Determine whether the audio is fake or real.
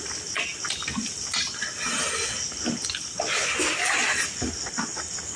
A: real